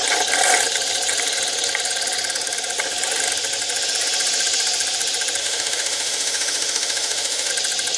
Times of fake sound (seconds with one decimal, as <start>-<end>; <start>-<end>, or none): 5.4-7.5